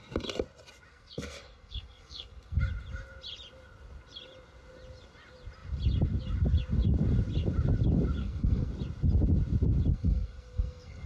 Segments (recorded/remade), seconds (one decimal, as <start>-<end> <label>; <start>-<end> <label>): 0.0-0.9 recorded; 0.9-2.6 remade; 2.6-8.2 recorded; 8.2-8.7 remade; 8.7-9.9 recorded; 9.9-11.1 remade